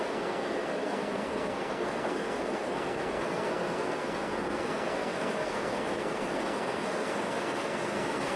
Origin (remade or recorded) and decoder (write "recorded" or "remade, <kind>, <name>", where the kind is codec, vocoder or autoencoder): remade, codec, SNAC